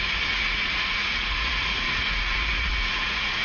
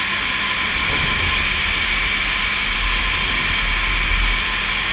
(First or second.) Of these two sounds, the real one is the second